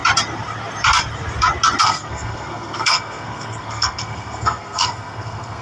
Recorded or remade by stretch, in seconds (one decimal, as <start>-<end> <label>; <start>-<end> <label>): 0.0-1.8 recorded; 1.8-5.6 remade